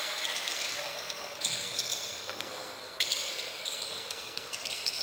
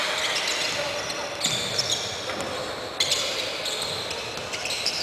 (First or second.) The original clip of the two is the second